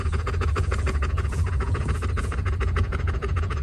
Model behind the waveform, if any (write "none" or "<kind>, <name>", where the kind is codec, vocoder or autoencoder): vocoder, Vocos